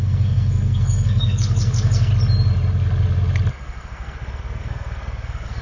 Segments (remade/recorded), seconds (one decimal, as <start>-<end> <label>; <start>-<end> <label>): 0.0-2.1 remade; 2.1-3.5 recorded; 3.5-5.6 remade